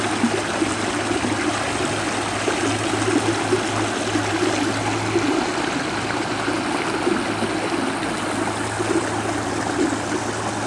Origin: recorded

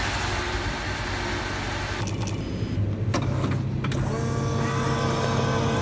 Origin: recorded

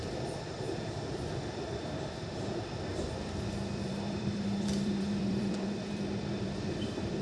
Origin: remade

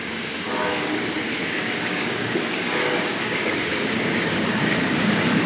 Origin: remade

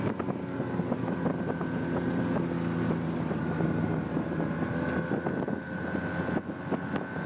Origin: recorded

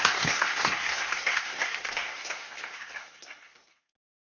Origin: remade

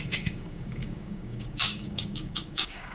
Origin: remade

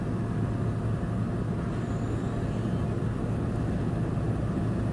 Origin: recorded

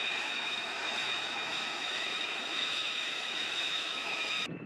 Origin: remade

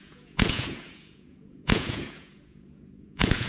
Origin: remade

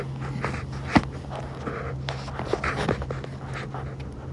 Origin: recorded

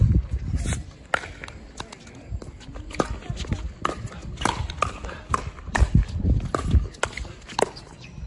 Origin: recorded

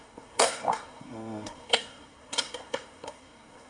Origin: remade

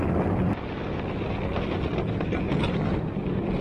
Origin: recorded